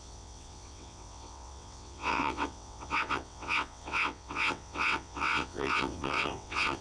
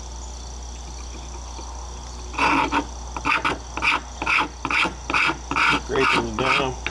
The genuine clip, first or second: second